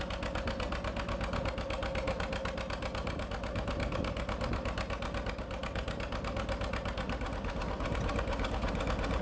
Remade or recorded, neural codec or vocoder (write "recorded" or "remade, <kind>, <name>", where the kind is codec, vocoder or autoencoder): recorded